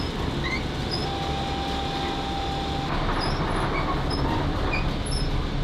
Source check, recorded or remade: recorded